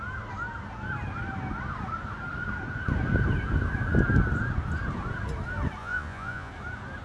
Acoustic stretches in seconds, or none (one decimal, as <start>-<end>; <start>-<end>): 0.0-5.8; 6.5-7.0